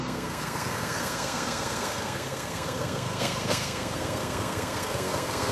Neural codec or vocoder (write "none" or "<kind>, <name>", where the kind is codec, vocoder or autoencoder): codec, SNAC